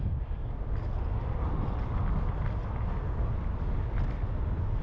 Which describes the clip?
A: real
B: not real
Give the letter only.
A